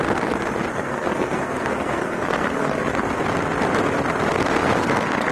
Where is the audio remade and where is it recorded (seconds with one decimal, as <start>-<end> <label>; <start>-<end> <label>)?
0.0-0.7 recorded; 0.7-3.1 remade; 3.1-4.3 recorded; 4.3-5.3 remade